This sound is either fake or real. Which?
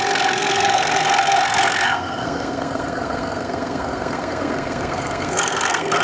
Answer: fake